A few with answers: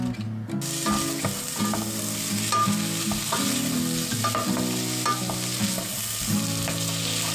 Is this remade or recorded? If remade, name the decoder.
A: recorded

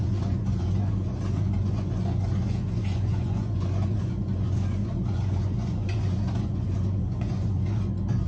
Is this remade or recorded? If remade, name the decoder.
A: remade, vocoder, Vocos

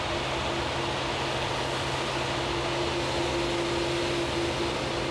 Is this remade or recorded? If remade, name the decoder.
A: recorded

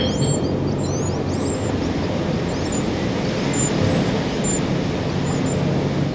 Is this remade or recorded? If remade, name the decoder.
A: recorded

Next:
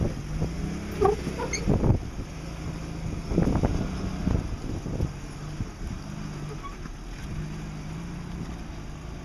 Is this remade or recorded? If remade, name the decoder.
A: recorded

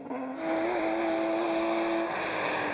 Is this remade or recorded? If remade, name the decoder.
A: recorded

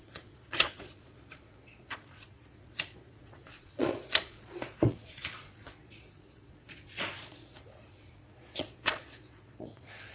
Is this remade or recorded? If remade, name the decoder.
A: remade, vocoder, Vocos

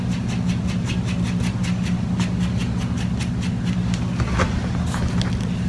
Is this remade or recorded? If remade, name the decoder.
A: recorded